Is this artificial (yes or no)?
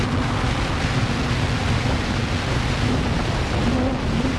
no